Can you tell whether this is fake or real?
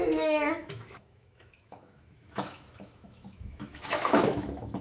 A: fake